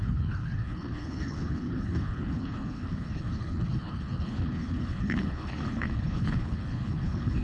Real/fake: fake